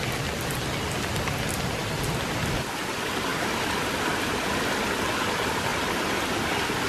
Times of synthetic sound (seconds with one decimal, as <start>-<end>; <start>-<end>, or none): none